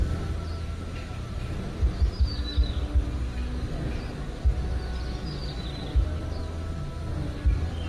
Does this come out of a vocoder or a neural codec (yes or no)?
no